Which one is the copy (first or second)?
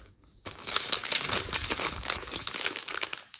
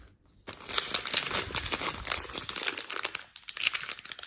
first